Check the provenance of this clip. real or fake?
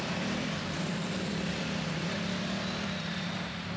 fake